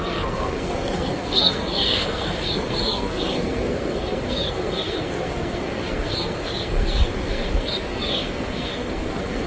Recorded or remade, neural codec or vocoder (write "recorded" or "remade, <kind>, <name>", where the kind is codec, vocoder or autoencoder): remade, codec, SNAC